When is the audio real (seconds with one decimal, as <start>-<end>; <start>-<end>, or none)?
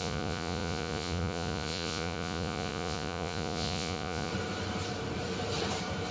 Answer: 4.3-6.1